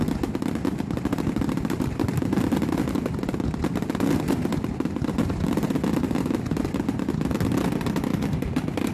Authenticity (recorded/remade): recorded